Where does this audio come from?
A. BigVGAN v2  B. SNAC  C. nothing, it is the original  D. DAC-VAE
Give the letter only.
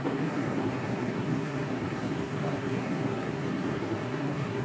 B